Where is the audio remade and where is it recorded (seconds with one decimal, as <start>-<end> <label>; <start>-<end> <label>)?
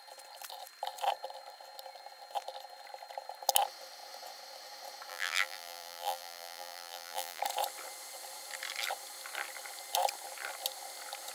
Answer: 0.0-5.1 recorded; 5.1-7.4 remade; 7.4-11.3 recorded